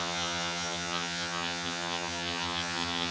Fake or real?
fake